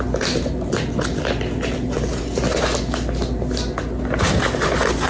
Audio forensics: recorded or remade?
recorded